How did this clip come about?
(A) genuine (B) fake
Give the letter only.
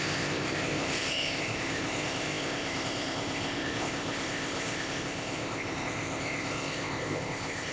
B